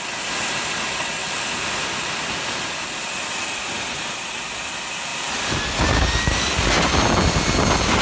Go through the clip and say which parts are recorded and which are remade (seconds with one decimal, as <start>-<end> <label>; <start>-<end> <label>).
0.0-8.0 recorded

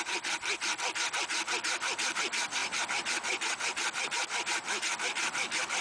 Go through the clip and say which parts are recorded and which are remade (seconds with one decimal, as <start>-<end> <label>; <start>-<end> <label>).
0.0-5.8 recorded

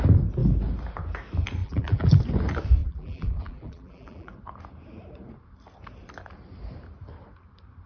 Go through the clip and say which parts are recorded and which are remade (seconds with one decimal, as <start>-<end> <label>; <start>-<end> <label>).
0.0-1.6 recorded; 1.6-2.2 remade; 2.2-2.8 recorded; 2.8-4.3 remade; 4.3-7.9 recorded